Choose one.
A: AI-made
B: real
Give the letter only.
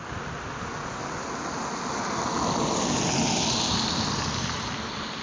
B